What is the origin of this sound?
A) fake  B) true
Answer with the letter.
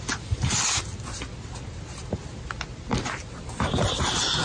B